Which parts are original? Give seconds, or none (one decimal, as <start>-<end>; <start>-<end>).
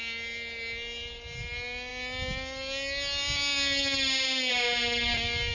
0.0-5.5